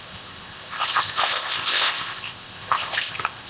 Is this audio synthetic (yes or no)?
yes